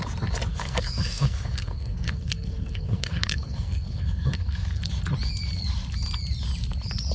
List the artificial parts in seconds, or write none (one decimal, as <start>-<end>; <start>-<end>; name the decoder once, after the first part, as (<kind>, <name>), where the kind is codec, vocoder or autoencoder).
0.5-4.8 (codec, SNAC)